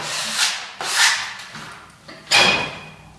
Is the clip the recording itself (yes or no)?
yes